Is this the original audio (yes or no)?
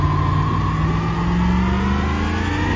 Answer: yes